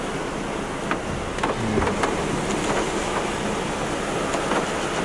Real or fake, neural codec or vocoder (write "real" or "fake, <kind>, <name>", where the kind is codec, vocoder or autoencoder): real